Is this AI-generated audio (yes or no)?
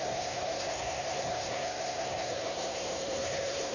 yes